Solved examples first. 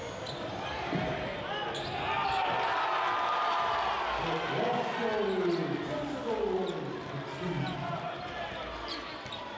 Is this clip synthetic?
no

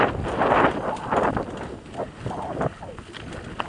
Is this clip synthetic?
no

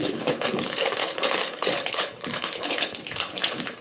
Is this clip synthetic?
yes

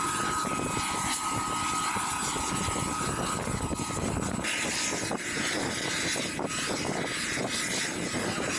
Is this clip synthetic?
no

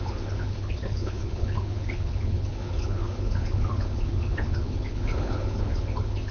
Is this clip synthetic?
yes